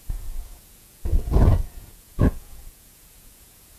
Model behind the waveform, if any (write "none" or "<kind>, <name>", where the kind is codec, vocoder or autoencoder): vocoder, Vocos